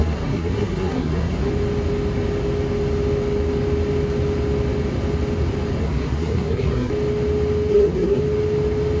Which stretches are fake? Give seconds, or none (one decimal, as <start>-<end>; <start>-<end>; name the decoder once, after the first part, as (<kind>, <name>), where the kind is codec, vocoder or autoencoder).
0.0-1.5 (codec, SNAC); 5.8-6.9; 7.7-8.2